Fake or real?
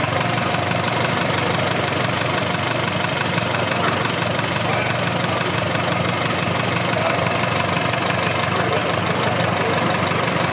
real